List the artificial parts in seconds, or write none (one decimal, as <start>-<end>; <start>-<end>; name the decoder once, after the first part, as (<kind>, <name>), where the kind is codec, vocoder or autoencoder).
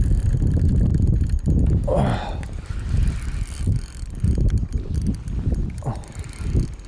none